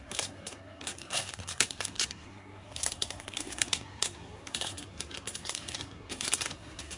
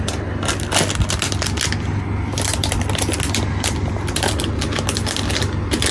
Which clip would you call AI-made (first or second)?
first